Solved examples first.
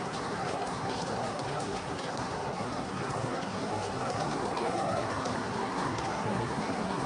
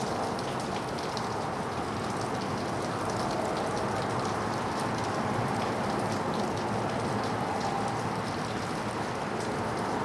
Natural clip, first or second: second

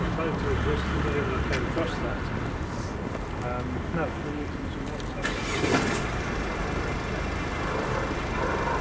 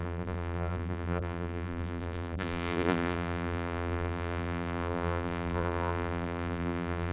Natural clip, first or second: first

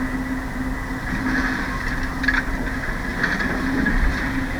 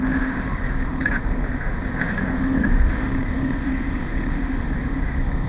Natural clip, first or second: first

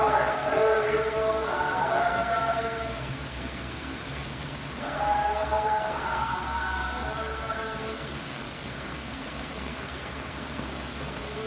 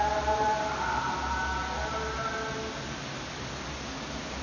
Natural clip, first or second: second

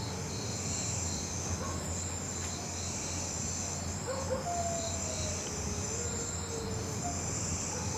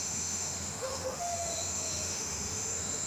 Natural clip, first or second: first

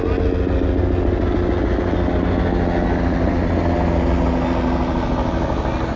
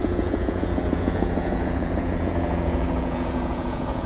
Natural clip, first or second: first